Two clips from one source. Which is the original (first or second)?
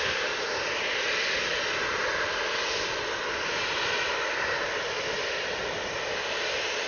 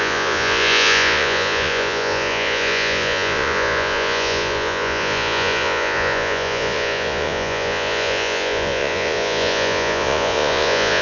first